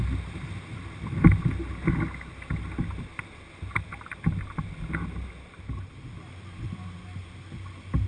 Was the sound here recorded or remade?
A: recorded